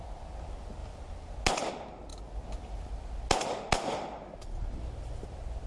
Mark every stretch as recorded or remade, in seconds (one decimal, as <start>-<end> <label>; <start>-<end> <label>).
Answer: 0.0-5.7 recorded